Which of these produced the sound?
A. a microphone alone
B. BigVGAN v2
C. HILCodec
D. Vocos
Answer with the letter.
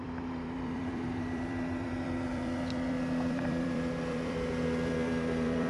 B